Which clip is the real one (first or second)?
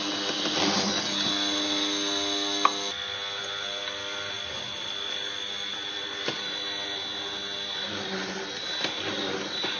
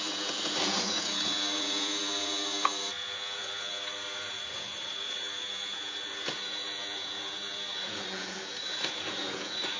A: first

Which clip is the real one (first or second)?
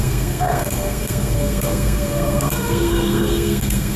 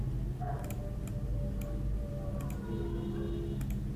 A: second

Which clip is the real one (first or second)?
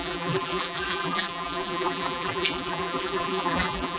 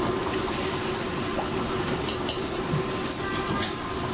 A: second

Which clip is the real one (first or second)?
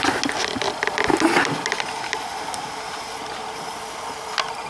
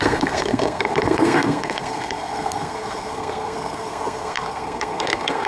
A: first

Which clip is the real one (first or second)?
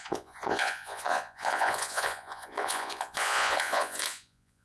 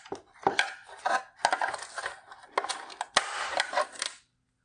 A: second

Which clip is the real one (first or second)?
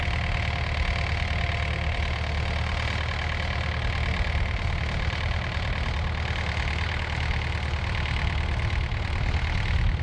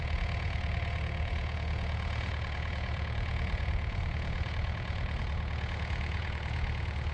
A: first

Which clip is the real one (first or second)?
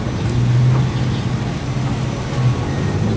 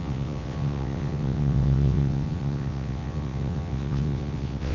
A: first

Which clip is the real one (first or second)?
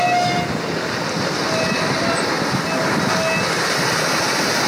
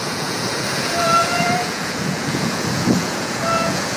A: first